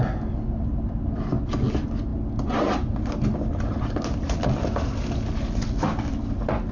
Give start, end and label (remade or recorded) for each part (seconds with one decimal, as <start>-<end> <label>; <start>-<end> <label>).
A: 0.0-6.7 recorded